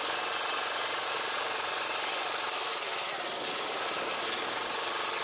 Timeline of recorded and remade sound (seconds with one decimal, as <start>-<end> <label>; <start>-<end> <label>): 0.0-0.8 recorded; 0.8-1.4 remade; 1.4-5.2 recorded